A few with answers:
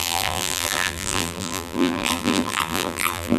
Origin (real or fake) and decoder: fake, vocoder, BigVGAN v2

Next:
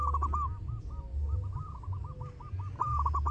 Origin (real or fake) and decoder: real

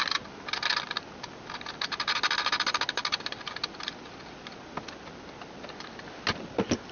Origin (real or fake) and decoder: real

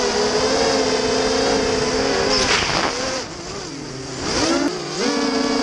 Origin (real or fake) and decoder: real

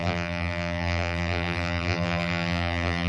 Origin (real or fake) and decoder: fake, vocoder, BigVGAN v2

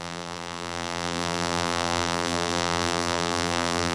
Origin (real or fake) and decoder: fake, vocoder, BigVGAN v2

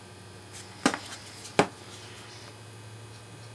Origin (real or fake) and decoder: real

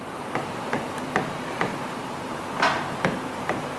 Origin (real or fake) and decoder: fake, vocoder, BigVGAN v2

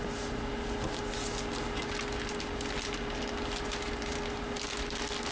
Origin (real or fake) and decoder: real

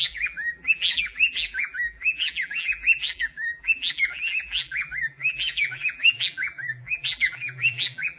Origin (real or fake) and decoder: fake, vocoder, BigVGAN v2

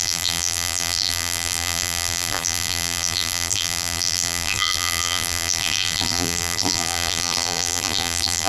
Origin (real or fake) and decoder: fake, vocoder, BigVGAN v2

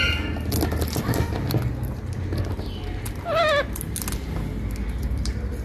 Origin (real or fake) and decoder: real